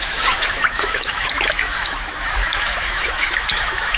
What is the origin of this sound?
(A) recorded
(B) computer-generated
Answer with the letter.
B